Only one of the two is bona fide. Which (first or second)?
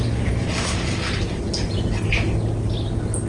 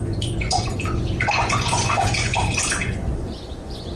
first